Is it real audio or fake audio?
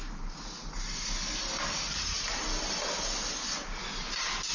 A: real